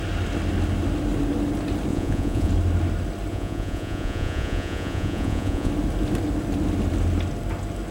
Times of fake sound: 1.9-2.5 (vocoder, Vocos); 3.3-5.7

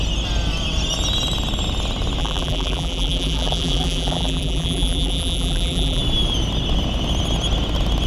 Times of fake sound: 2.2-6.0 (vocoder, BigVGAN v2)